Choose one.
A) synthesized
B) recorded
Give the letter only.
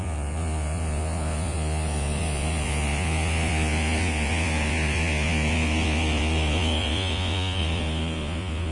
A